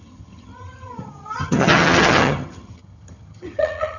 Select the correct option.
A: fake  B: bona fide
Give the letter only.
A